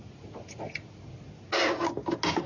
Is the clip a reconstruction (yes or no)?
no